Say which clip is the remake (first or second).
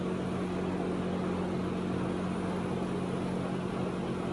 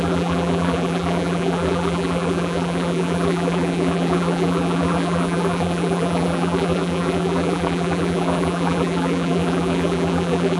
second